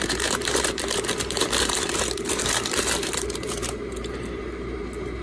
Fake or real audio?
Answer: fake